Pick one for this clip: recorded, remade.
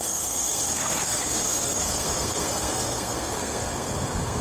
remade